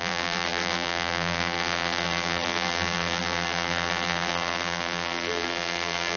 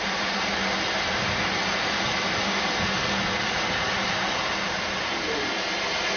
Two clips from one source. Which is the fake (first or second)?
first